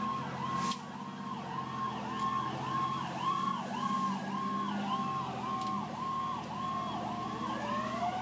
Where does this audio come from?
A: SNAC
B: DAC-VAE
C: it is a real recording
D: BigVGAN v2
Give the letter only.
C